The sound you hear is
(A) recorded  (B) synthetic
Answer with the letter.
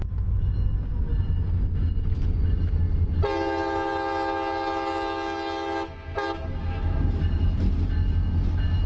A